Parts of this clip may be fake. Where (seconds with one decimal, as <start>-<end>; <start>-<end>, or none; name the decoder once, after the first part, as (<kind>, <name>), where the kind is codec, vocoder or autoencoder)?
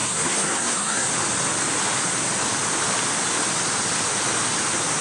0.0-1.1 (codec, SNAC)